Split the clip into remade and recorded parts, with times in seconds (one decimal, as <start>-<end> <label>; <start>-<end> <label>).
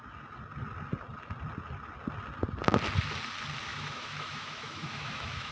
0.0-3.7 recorded; 3.7-5.5 remade